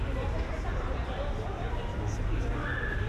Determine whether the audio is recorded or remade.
recorded